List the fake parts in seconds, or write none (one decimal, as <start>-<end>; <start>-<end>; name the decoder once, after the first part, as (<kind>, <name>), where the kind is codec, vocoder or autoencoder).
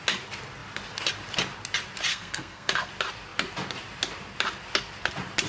2.1-2.9 (codec, SNAC)